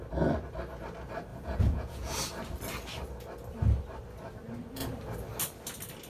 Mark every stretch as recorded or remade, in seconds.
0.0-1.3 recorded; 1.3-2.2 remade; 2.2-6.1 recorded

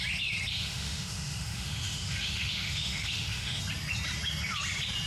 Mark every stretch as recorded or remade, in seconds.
0.0-0.5 recorded; 0.5-3.6 remade; 3.6-5.1 recorded